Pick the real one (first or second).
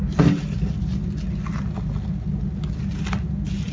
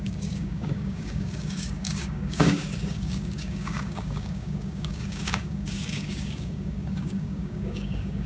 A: first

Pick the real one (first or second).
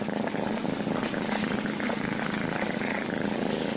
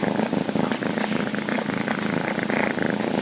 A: second